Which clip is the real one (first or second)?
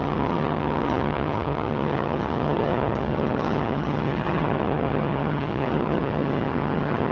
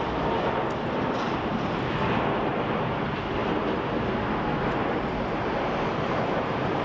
second